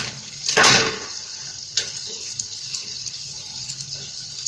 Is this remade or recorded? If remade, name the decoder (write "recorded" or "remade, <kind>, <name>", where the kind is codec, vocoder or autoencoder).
remade, codec, HILCodec